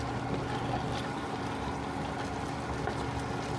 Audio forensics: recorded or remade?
recorded